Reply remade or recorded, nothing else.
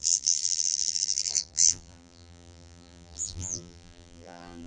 remade